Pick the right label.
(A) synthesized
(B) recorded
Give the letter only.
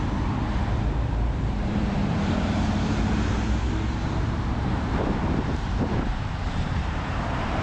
A